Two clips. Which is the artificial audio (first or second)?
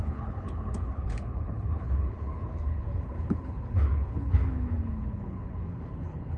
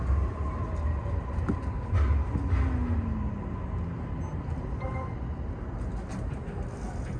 first